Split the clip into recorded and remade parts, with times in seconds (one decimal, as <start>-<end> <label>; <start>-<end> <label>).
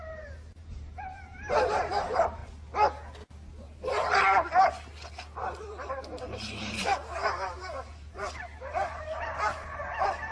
0.0-2.4 remade; 2.4-6.2 recorded; 6.2-10.3 remade